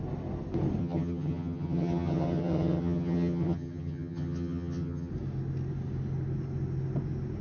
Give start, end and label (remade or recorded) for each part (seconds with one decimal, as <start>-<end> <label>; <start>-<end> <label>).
0.0-0.8 recorded; 0.8-5.1 remade; 5.1-7.4 recorded